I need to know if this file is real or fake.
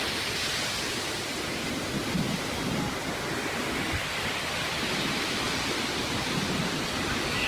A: real